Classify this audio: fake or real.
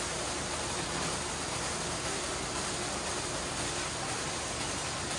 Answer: real